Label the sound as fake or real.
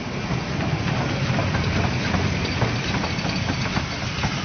real